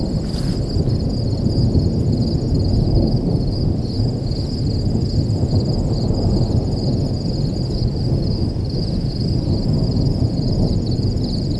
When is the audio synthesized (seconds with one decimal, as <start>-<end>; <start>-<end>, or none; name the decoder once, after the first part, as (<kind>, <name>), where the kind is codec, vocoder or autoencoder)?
none